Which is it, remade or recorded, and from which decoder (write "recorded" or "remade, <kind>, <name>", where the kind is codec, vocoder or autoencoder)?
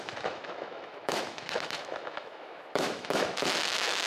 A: remade, autoencoder, DAC-VAE